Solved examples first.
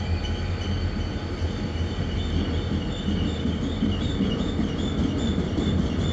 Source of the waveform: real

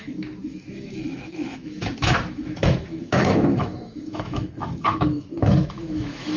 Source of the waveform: fake